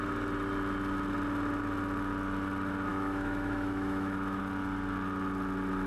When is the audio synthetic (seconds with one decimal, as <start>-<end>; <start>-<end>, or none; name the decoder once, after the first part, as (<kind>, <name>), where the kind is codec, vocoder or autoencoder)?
2.9-4.4 (autoencoder, DAC-VAE)